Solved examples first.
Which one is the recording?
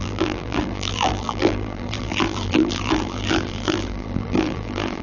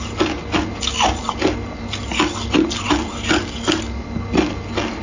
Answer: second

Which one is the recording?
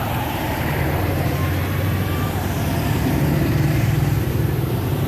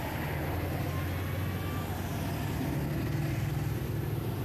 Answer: second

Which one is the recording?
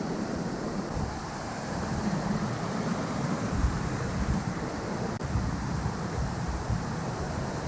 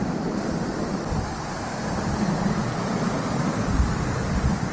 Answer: second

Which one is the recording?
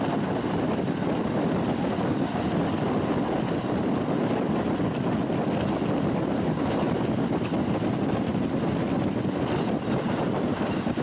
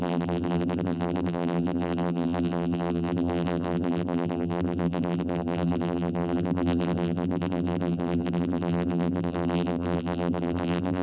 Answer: first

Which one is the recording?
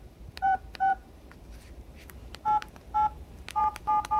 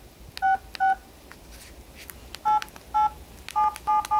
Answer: second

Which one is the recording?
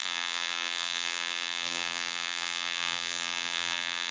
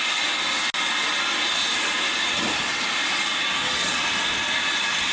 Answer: second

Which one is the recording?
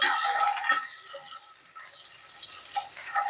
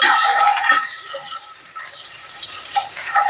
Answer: first